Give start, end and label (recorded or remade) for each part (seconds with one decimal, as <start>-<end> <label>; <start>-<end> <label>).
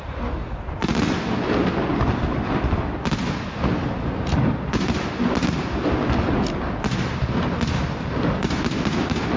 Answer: 0.0-9.4 recorded